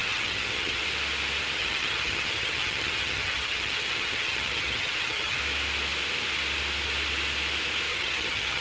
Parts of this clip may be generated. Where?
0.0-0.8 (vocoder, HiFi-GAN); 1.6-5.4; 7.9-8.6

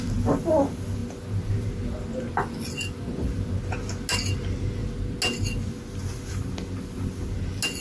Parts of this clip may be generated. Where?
none

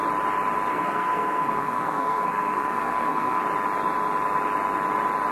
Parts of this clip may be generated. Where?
0.7-3.4 (codec, SNAC)

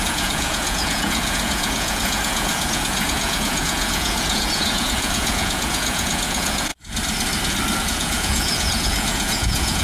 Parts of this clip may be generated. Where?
0.0-6.7 (vocoder, Vocos); 7.8-9.8

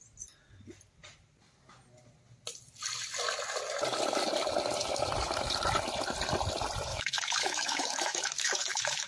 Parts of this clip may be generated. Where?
6.9-9.1 (autoencoder, DAC-VAE)

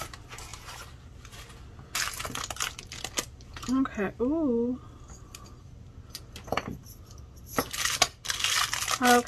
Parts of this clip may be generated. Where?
none